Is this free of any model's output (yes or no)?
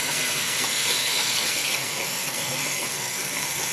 no